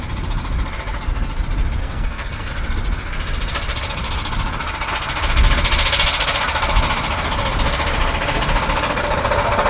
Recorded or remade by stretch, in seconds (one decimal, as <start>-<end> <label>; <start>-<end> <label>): 0.0-1.8 recorded; 1.8-2.5 remade; 2.5-9.7 recorded